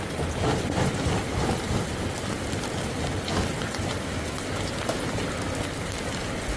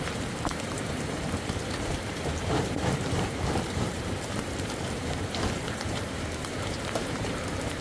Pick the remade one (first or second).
second